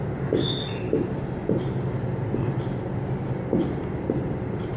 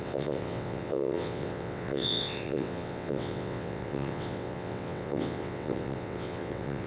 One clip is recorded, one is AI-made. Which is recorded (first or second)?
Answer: first